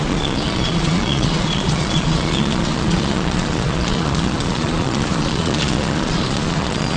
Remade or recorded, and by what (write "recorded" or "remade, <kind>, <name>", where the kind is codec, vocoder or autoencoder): remade, vocoder, Vocos